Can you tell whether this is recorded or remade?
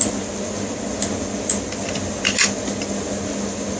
recorded